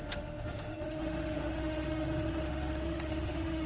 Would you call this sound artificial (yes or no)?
yes